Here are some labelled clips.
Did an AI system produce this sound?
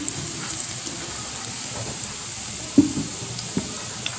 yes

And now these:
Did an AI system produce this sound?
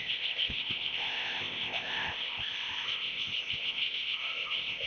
yes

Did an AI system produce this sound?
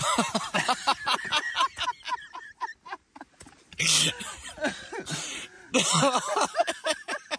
no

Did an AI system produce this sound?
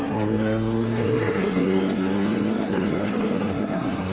yes